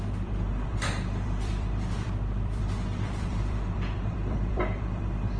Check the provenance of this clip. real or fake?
fake